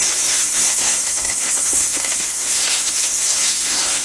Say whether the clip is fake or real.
fake